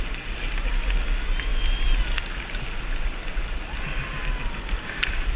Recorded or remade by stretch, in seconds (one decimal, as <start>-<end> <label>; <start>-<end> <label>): 0.0-5.4 recorded